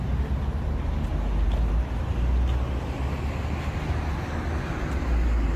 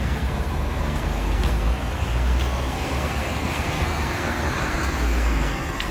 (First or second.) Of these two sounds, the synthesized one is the second